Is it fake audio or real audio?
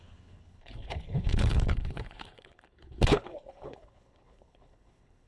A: fake